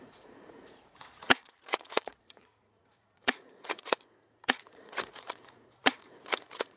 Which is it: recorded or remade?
remade